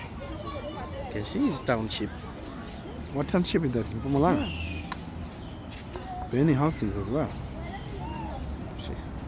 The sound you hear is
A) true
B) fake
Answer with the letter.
A